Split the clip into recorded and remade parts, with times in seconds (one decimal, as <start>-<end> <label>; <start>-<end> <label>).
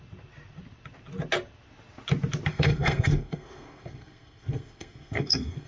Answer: 0.0-2.5 recorded; 2.5-5.7 remade